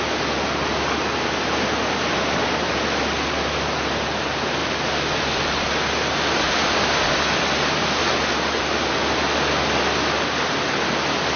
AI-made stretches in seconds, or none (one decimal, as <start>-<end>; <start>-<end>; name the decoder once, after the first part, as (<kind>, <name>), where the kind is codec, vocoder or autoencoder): 8.0-8.9 (vocoder, BigVGAN v2)